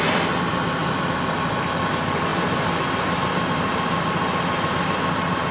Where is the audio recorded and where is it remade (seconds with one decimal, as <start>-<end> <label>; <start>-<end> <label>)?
0.0-5.5 recorded